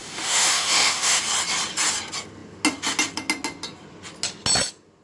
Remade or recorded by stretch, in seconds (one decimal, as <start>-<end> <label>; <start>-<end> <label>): 0.0-1.2 remade; 1.2-5.0 recorded